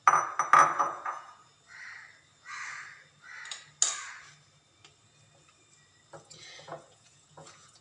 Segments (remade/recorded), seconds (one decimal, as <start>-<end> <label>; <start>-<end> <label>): 0.0-0.8 recorded; 0.8-1.5 remade; 1.5-6.2 recorded; 6.2-7.8 remade